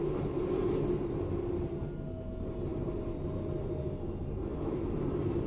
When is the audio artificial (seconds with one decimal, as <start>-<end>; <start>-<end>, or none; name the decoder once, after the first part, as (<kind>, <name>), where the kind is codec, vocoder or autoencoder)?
4.5-5.5 (vocoder, BigVGAN v2)